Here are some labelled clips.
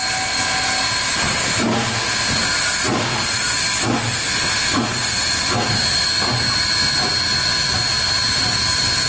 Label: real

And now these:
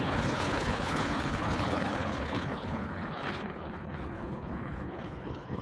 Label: fake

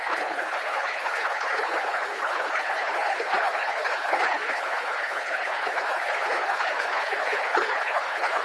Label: fake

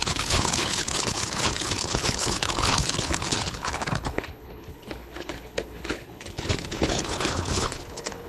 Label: fake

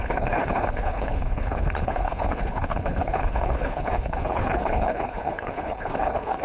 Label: fake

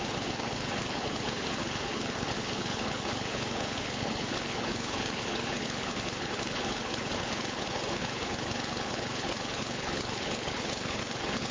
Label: fake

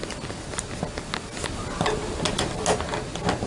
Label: real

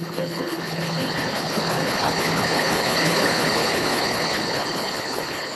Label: fake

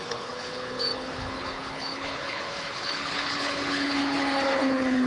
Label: fake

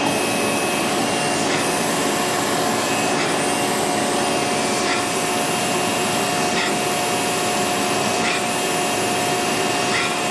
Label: real